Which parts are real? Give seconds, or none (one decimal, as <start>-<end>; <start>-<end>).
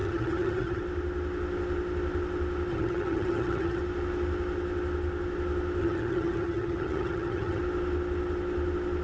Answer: 0.8-2.7; 3.8-5.8; 7.6-9.0